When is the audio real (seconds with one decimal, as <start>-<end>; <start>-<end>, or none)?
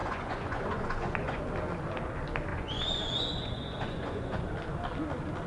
1.4-2.5; 4.4-5.5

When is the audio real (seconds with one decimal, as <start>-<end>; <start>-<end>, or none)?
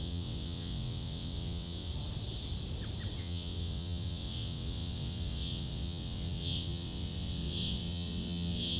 1.9-3.2